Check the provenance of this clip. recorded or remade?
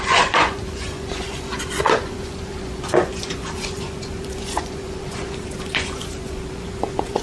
remade